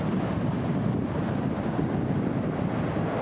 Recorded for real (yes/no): yes